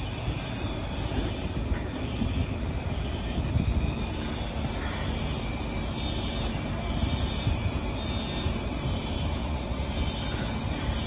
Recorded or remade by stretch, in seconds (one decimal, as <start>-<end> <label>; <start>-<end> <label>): 0.0-9.4 recorded; 9.4-9.9 remade; 9.9-11.1 recorded